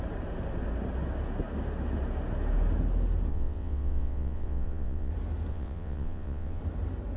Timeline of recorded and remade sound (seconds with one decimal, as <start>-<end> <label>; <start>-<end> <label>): 0.0-3.3 recorded; 3.3-5.1 remade; 5.1-5.5 recorded; 5.5-6.6 remade; 6.6-7.2 recorded